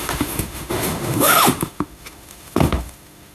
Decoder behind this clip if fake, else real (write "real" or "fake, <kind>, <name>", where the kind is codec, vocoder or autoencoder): fake, autoencoder, DAC-VAE